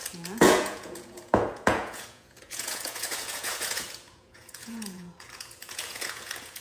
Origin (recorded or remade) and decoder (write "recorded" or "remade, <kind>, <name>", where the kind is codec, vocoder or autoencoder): remade, vocoder, Vocos